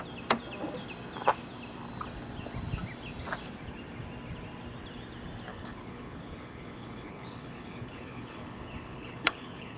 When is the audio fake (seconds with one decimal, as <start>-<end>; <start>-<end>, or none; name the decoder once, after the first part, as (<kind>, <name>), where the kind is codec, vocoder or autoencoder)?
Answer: 5.5-9.8 (codec, HILCodec)